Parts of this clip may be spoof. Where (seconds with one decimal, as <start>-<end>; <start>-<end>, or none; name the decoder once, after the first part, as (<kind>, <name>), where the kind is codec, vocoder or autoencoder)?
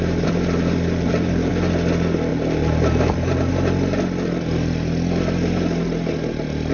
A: 0.0-1.5 (vocoder, BigVGAN v2); 2.3-3.5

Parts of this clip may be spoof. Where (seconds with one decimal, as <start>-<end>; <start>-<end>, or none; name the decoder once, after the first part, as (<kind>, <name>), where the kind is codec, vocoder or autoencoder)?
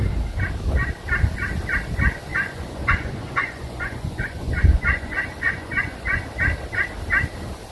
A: 2.3-6.2 (vocoder, Vocos)